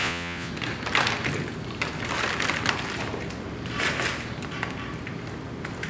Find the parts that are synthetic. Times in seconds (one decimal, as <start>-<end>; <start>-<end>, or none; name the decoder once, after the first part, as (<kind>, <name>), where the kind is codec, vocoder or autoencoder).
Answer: 0.0-0.5 (vocoder, Vocos)